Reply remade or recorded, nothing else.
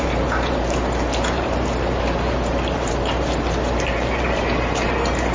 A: remade